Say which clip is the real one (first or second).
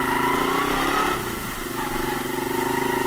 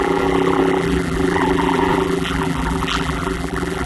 first